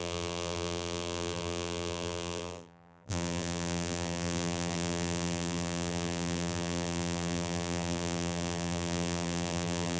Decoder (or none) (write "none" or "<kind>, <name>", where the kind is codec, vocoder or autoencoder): vocoder, BigVGAN v2